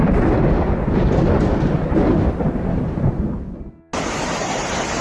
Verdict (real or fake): real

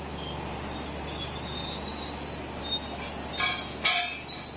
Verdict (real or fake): real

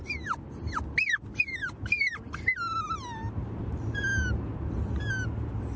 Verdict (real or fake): real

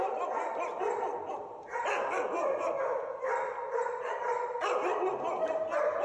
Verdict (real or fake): real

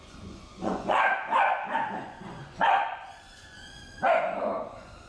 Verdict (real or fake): fake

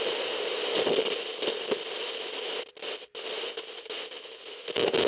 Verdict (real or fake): real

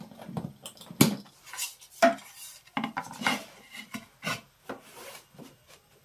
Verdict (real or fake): real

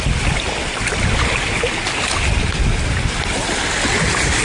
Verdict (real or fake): real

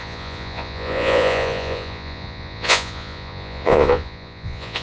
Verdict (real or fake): fake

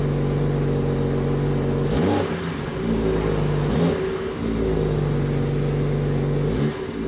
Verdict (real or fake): real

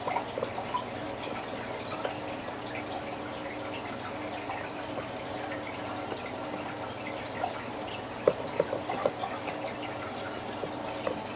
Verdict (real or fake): real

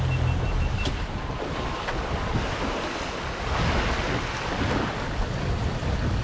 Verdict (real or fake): real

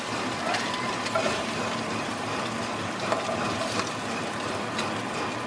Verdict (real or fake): fake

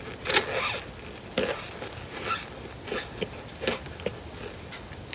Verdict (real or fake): real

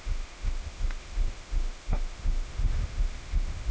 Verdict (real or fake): fake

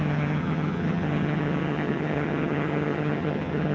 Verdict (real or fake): fake